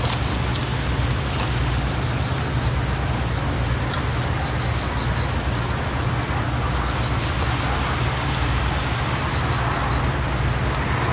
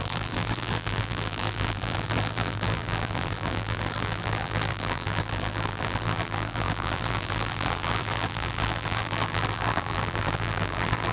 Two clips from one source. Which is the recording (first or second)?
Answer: first